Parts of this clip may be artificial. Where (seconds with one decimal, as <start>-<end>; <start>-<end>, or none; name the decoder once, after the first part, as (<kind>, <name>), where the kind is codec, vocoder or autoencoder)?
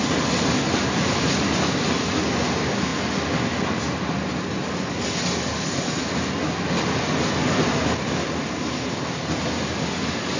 none